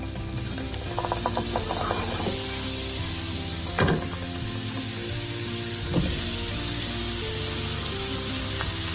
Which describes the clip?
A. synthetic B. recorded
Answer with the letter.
B